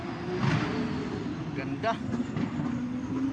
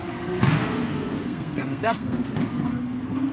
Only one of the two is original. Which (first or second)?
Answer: first